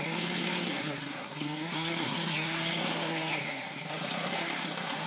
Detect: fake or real fake